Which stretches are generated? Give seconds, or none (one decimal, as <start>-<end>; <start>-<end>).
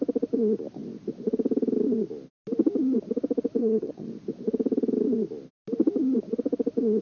3.6-4.1